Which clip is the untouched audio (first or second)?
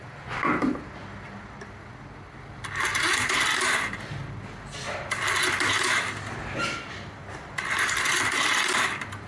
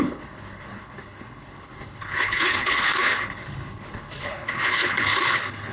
first